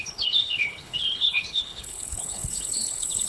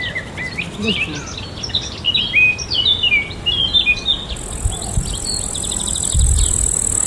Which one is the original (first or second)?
second